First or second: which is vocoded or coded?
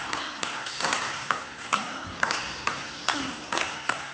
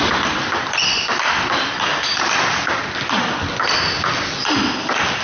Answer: first